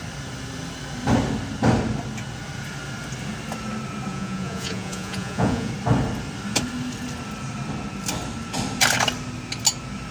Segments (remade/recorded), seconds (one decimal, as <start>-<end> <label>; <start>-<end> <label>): 0.0-4.1 recorded; 4.1-5.7 remade; 5.7-10.1 recorded